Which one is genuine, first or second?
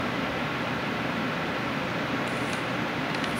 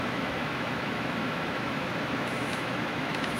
first